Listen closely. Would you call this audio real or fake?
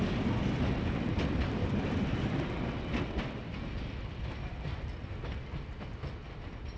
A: real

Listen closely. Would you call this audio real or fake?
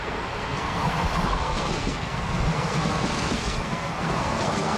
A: fake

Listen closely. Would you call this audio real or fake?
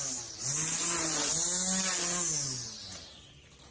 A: real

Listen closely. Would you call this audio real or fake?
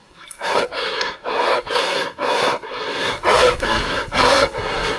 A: fake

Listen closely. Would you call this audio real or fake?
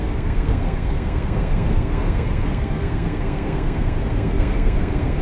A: fake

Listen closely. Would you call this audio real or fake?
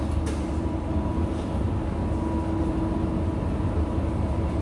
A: real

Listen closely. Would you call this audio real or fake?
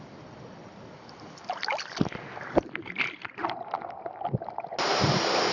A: real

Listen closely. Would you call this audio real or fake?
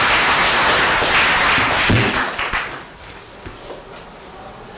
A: real